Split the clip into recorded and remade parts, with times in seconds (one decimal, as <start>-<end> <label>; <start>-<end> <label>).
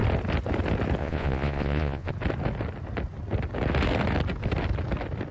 0.0-1.0 recorded; 1.0-2.1 remade; 2.1-5.3 recorded